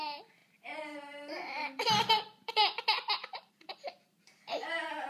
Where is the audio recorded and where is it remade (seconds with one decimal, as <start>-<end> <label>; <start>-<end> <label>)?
0.0-5.1 remade